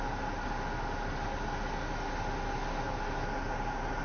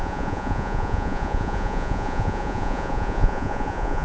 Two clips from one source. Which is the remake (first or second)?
second